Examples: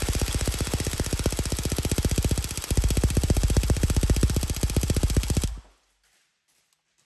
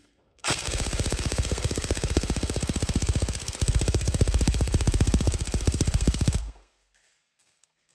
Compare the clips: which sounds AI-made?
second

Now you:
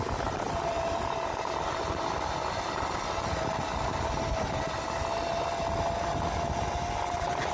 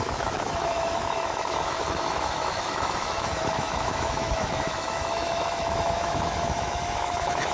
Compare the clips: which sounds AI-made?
second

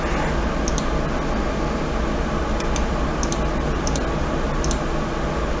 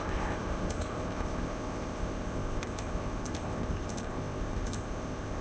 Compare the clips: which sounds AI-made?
second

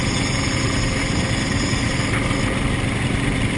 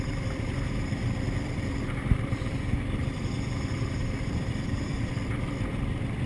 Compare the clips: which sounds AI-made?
second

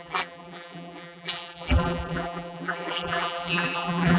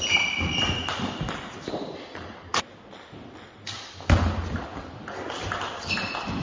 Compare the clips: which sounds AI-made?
first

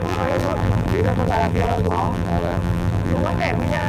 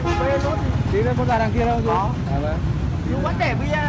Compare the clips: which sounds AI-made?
first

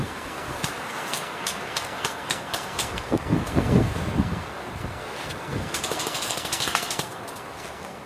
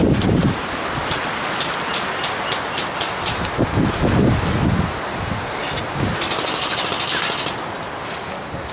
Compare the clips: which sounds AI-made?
first